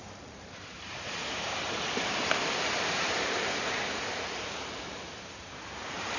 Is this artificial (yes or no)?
yes